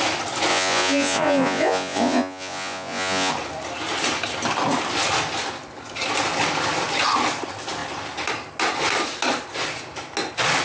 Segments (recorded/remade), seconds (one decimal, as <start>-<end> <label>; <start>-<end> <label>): 0.0-0.5 recorded; 0.5-3.3 remade; 3.3-10.6 recorded